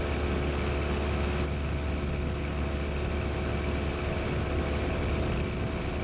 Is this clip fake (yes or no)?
no